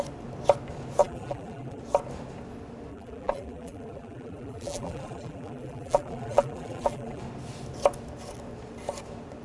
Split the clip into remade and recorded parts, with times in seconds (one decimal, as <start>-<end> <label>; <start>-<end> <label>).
0.0-1.0 recorded; 1.0-1.8 remade; 1.8-2.9 recorded; 2.9-7.2 remade; 7.2-9.4 recorded

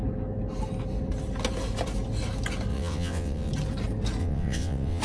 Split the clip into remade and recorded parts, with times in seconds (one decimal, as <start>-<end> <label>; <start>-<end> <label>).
0.0-2.7 recorded; 2.7-3.5 remade; 3.5-4.2 recorded; 4.2-5.0 remade

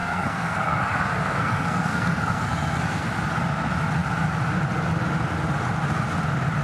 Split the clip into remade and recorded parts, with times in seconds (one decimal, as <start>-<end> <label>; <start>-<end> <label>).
0.0-3.1 remade; 3.1-6.6 recorded